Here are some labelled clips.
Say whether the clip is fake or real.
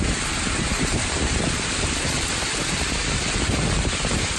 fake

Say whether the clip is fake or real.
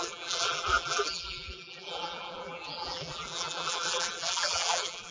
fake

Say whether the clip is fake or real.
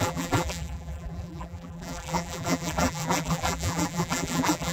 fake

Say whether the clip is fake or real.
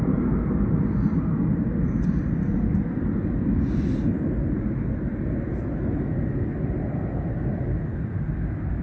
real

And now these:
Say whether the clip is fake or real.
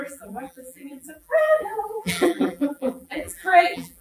fake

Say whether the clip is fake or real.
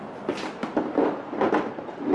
real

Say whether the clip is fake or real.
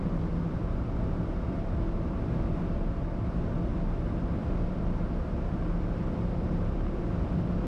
fake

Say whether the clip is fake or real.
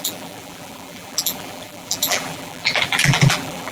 fake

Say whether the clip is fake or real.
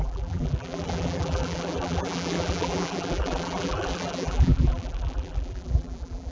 fake